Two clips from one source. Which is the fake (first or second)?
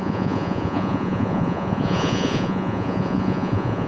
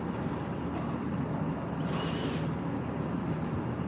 first